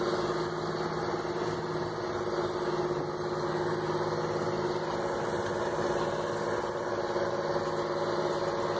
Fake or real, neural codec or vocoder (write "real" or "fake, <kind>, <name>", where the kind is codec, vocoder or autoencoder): real